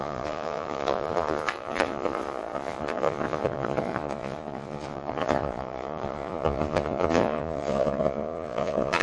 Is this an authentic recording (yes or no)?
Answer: no